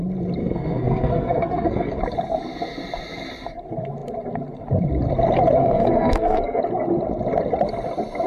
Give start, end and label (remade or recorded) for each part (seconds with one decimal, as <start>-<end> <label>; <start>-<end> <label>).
0.0-0.4 recorded; 0.4-2.0 remade; 2.0-5.6 recorded; 5.6-6.6 remade; 6.6-8.3 recorded